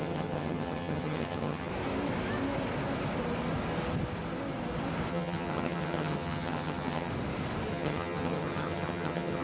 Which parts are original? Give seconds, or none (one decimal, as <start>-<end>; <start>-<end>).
1.7-5.1; 7.1-7.7